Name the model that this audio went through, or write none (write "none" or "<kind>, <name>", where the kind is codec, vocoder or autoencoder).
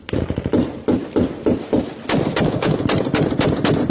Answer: none